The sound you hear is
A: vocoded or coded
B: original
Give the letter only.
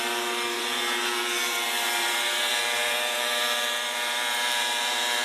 A